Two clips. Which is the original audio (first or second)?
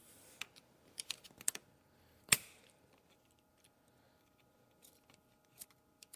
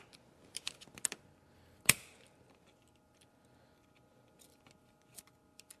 second